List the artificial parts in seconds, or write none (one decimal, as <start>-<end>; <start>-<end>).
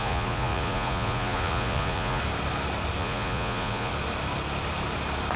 0.0-2.2; 3.0-3.9